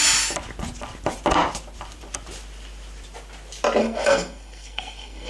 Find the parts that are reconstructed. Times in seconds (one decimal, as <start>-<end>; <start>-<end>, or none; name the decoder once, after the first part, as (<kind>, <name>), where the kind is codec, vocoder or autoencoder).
3.8-5.3 (codec, SNAC)